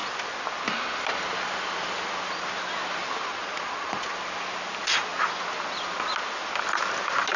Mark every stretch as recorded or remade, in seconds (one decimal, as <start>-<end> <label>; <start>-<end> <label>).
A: 0.0-3.3 recorded; 3.3-4.0 remade; 4.0-7.4 recorded